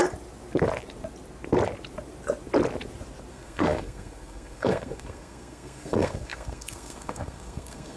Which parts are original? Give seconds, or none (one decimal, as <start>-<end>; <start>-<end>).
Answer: 0.0-3.3